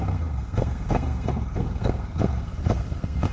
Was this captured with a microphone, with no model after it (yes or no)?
no